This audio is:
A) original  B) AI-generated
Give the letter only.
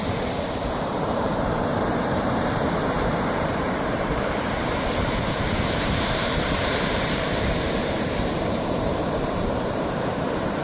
B